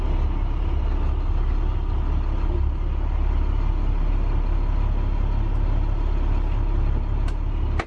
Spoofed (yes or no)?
no